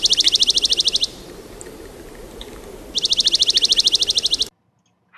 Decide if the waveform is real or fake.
real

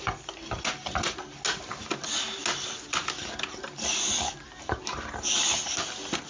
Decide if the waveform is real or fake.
real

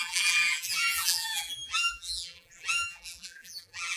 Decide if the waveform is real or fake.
fake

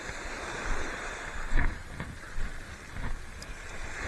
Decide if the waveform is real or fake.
real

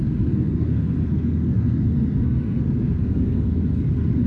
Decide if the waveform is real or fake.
fake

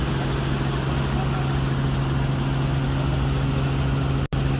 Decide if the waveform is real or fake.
real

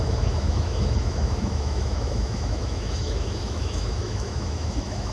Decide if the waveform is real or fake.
fake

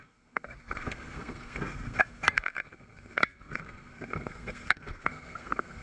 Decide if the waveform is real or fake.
fake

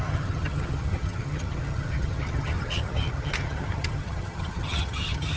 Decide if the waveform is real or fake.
fake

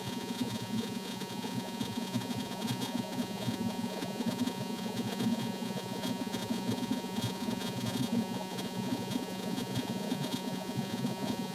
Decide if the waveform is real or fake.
fake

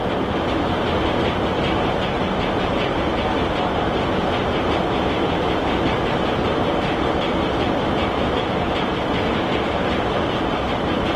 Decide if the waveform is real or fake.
real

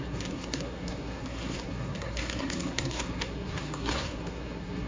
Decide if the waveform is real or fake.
fake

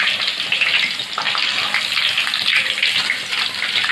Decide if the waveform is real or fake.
real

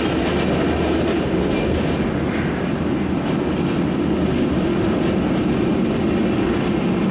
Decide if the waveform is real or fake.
real